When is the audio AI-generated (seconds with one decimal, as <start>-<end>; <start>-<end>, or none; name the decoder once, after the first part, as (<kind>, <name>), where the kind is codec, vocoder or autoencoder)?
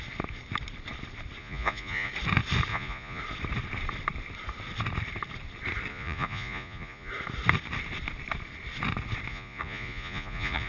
1.4-2.1 (vocoder, Vocos); 2.7-3.2; 5.9-7.1; 9.3-10.7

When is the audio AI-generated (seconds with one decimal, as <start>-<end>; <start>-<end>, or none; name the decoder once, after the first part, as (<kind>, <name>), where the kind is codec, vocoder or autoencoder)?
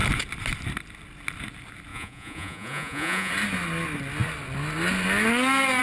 1.9-3.3 (vocoder, Vocos)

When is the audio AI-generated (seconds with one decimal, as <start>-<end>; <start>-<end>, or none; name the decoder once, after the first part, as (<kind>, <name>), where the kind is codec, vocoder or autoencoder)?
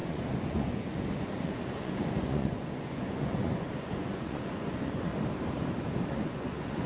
0.0-5.1 (vocoder, Vocos); 6.1-6.9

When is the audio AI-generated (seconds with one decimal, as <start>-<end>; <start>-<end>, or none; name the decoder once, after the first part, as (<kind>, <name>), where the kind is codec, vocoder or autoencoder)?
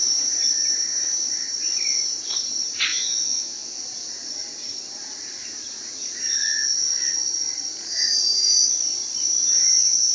2.9-3.8 (vocoder, Vocos)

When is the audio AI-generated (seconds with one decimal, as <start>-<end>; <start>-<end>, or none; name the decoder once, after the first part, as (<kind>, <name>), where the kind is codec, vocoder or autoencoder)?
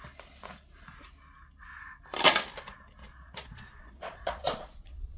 3.0-5.2 (vocoder, Vocos)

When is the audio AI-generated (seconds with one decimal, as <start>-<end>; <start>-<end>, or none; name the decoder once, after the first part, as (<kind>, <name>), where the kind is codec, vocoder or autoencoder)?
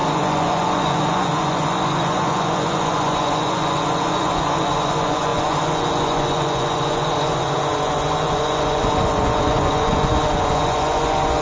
0.0-11.4 (vocoder, Vocos)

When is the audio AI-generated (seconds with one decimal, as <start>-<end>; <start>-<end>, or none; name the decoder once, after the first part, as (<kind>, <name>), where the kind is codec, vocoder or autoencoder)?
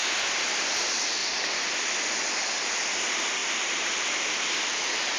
none